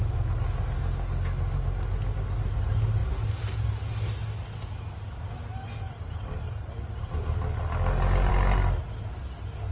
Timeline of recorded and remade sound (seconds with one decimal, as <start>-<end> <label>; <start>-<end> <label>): 0.0-9.7 recorded